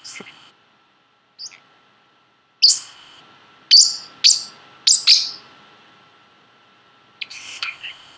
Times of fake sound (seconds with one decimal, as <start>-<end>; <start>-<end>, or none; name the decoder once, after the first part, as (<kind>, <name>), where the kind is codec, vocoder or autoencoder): 0.0-0.5 (codec, ZipCodec); 2.7-3.2; 7.3-8.2